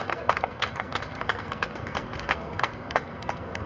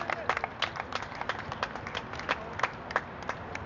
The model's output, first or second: first